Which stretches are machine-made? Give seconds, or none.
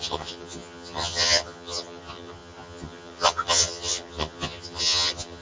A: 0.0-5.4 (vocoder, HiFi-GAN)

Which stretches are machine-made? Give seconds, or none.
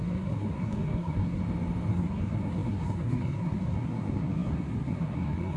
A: 0.0-1.4 (codec, SNAC); 1.9-5.6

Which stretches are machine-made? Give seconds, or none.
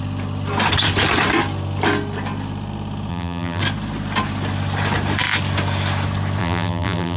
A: 3.1-3.6 (vocoder, BigVGAN v2); 6.4-7.2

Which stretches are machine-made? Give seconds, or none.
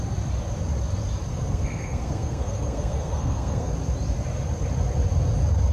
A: 1.3-3.7 (codec, SNAC)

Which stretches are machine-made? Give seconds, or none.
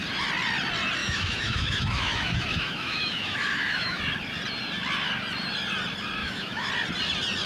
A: 1.0-4.0 (autoencoder, DAC-VAE); 6.2-6.7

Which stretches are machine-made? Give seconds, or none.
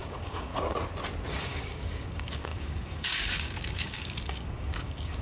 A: 0.0-0.5 (codec, DAC); 1.4-5.2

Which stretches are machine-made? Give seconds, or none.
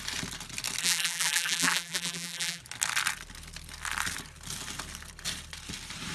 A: 0.8-2.6 (vocoder, BigVGAN v2)